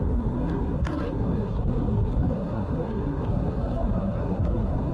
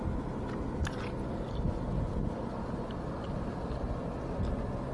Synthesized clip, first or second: first